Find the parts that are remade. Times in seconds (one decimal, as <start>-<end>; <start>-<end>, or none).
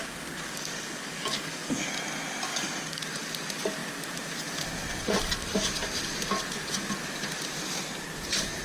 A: 0.0-1.9; 2.5-3.0